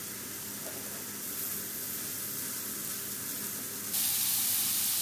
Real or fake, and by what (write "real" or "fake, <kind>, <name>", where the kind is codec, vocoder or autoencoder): real